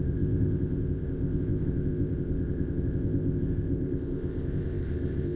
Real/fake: fake